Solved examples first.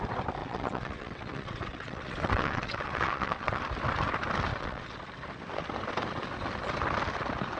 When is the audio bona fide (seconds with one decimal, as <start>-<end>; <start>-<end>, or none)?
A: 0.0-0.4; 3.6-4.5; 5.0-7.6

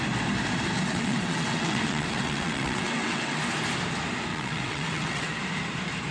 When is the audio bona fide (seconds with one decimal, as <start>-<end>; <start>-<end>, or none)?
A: 0.0-0.9; 3.4-4.3; 5.4-6.1

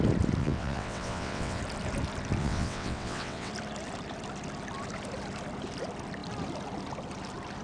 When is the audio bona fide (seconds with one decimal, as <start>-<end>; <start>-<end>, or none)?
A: 0.0-0.4; 1.6-2.4; 3.5-7.6

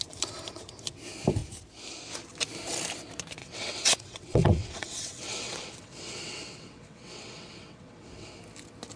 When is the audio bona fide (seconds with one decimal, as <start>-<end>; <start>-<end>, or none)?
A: 0.0-3.4; 8.4-9.0

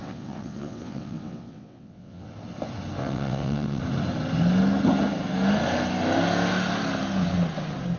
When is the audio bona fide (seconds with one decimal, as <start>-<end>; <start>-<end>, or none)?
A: 2.3-3.0; 3.8-8.0

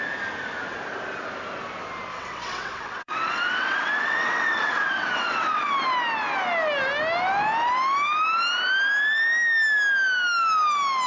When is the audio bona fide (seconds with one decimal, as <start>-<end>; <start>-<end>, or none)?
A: 0.0-2.1; 5.7-11.1

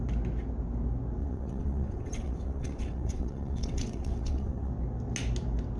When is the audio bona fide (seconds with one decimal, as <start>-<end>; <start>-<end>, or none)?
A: 0.0-1.2; 4.7-5.8